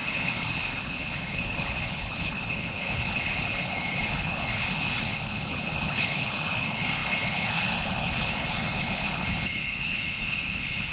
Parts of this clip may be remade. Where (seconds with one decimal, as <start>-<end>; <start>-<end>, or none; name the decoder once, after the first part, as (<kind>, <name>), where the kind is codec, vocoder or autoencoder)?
0.0-10.9 (codec, HILCodec)